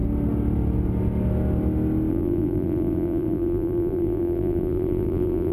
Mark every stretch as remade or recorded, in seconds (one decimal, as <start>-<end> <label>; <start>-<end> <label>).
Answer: 0.0-2.1 recorded; 2.1-5.5 remade